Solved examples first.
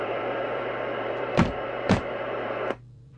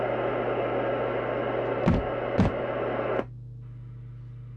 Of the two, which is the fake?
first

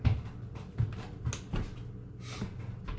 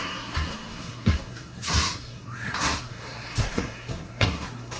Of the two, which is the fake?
second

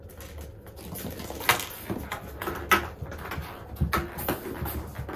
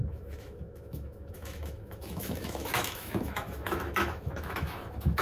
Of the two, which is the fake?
second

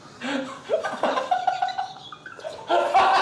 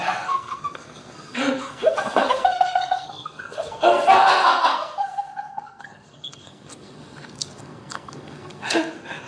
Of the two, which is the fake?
second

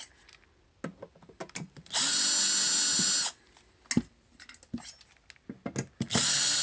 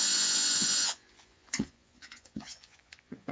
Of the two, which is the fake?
second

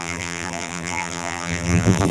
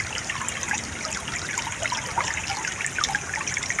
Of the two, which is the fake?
first